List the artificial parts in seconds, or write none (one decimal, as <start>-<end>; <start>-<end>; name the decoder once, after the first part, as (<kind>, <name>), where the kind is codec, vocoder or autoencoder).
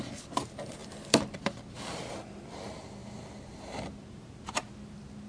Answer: none